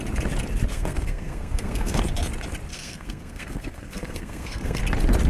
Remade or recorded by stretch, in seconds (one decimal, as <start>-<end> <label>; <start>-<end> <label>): 0.0-0.7 recorded; 0.7-2.0 remade; 2.0-2.7 recorded; 2.7-4.8 remade; 4.8-5.3 recorded